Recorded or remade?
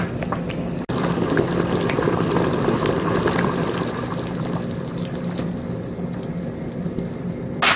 recorded